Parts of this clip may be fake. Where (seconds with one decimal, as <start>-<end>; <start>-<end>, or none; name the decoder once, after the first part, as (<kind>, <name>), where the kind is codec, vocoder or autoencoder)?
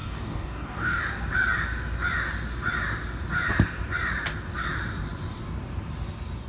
0.0-1.0 (codec, DAC)